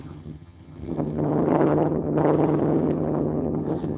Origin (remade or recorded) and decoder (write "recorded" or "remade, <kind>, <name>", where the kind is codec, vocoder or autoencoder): remade, vocoder, HiFi-GAN